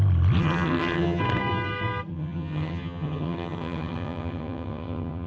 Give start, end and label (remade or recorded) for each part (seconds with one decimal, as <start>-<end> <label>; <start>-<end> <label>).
0.0-0.4 recorded; 0.4-1.2 remade; 1.2-2.1 recorded; 2.1-5.3 remade